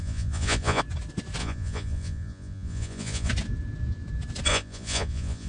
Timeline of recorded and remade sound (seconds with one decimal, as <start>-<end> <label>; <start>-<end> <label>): 0.0-0.8 remade; 0.8-1.4 recorded; 1.4-3.3 remade; 3.3-4.5 recorded; 4.5-5.5 remade